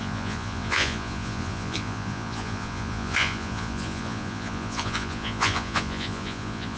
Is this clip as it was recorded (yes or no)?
no